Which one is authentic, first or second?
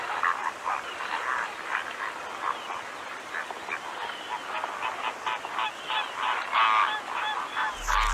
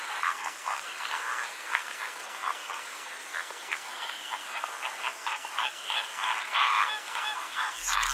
first